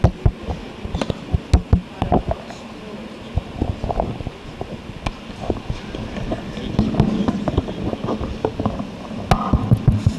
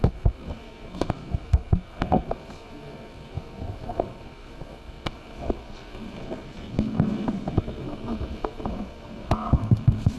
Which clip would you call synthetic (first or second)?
second